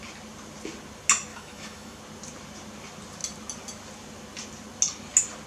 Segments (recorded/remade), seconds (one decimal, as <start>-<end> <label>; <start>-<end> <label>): 0.0-1.3 recorded; 1.3-2.0 remade; 2.0-5.5 recorded

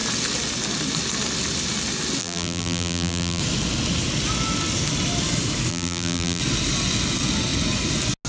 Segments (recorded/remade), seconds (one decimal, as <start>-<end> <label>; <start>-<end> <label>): 0.0-2.2 recorded; 2.2-3.4 remade; 3.4-5.7 recorded; 5.7-6.4 remade; 6.4-8.3 recorded

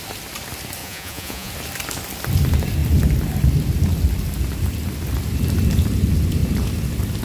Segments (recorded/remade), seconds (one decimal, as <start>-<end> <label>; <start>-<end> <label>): 0.0-0.8 recorded; 0.8-1.5 remade; 1.5-7.2 recorded

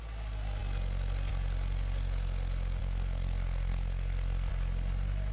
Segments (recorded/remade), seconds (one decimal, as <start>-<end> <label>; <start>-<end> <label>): 0.0-2.8 recorded; 2.8-4.5 remade; 4.5-5.3 recorded

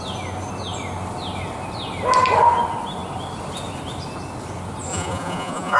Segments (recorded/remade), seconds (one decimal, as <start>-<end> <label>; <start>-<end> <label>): 0.0-4.9 recorded; 4.9-5.8 remade

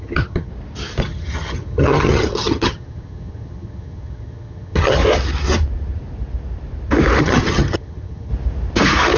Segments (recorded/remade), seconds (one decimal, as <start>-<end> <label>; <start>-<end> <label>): 0.0-0.5 remade; 0.5-1.0 recorded; 1.0-5.0 remade; 5.0-7.2 recorded; 7.2-8.3 remade; 8.3-9.2 recorded

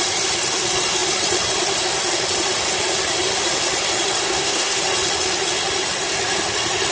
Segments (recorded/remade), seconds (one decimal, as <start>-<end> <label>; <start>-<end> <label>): 0.0-4.2 recorded; 4.2-4.8 remade; 4.8-6.9 recorded